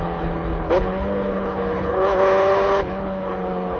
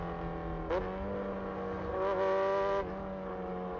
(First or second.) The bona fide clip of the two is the second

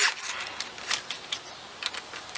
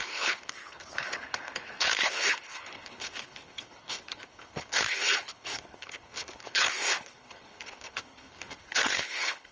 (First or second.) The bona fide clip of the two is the first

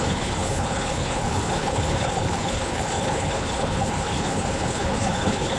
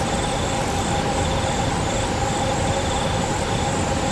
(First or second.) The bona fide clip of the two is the second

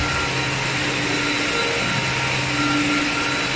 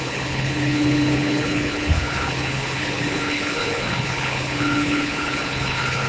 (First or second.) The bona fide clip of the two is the first